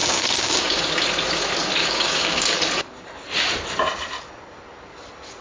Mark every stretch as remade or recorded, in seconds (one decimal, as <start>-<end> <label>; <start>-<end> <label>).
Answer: 0.0-0.8 remade; 0.8-1.8 recorded; 1.8-2.6 remade; 2.6-5.4 recorded